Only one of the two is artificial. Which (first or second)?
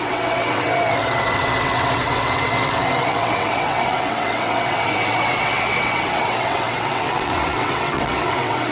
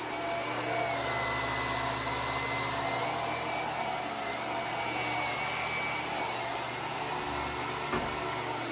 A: first